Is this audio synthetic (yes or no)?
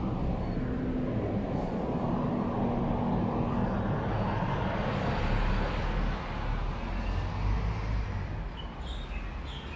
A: no